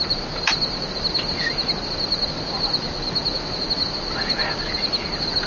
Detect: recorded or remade recorded